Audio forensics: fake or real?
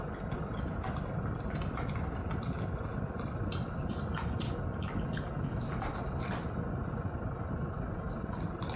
real